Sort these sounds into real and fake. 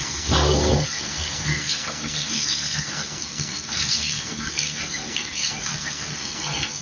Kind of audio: fake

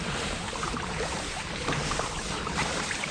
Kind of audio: fake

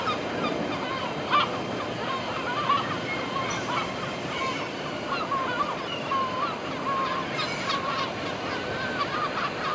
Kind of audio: real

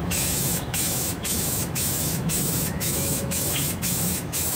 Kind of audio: fake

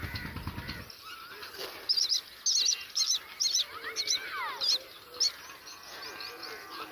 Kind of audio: real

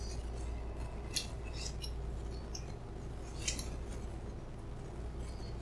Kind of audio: real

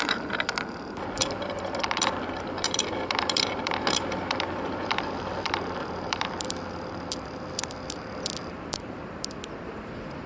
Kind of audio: fake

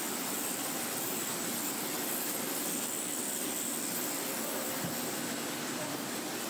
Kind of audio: fake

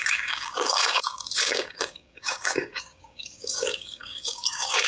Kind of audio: fake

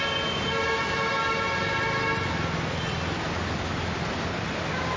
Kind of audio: real